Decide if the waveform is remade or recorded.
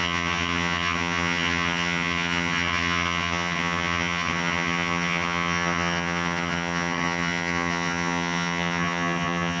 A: remade